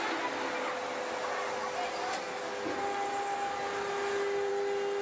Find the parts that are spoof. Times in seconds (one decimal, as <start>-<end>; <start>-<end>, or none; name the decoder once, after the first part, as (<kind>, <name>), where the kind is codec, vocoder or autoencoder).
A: none